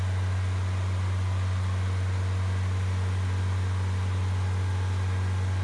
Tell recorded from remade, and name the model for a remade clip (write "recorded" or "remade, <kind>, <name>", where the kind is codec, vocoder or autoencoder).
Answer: recorded